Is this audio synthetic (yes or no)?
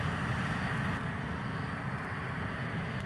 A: no